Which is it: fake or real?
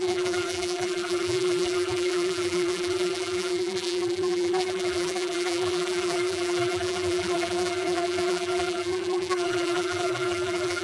fake